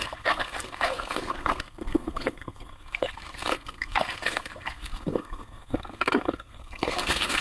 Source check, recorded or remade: remade